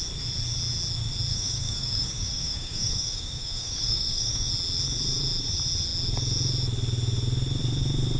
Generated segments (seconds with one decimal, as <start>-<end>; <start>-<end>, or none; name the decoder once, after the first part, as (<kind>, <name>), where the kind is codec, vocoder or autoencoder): 1.3-4.5 (codec, DAC)